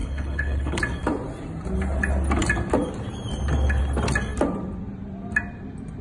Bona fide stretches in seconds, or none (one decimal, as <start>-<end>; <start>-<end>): 0.8-6.0